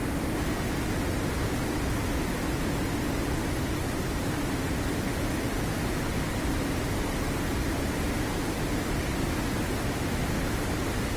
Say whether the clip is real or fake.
real